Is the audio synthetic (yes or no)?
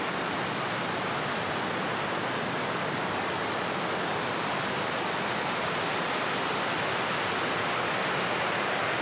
no